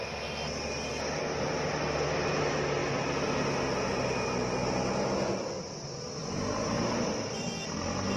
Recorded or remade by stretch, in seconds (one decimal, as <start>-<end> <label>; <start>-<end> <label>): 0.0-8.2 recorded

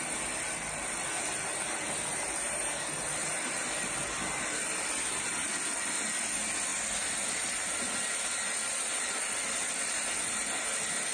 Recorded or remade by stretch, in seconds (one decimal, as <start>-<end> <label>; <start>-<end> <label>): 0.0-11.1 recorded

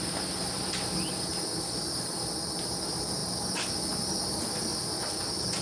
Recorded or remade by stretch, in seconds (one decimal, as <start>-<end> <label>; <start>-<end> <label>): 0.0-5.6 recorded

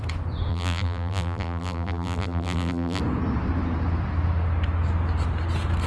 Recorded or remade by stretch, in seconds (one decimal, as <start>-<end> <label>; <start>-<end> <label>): 0.0-0.5 recorded; 0.5-3.0 remade; 3.0-5.9 recorded

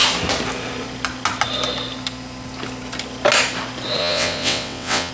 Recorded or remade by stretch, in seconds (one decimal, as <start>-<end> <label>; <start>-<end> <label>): 0.0-4.0 recorded; 4.0-5.1 remade